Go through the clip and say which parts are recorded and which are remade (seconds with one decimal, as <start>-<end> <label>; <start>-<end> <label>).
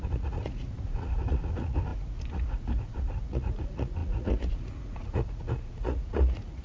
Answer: 0.0-6.6 remade